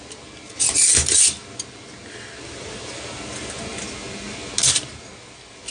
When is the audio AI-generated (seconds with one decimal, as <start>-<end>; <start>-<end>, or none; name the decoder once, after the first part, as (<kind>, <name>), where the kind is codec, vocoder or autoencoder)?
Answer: none